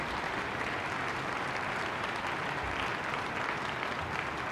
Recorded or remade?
recorded